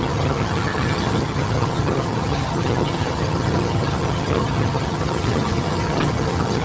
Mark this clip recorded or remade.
remade